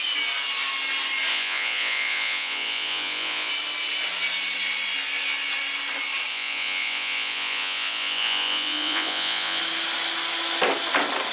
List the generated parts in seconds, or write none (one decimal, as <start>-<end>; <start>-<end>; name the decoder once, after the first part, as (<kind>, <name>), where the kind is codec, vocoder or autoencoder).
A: 1.3-3.5 (vocoder, Vocos); 6.3-9.6